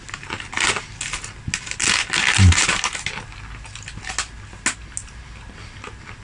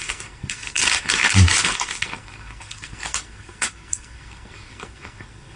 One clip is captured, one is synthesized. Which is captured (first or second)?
first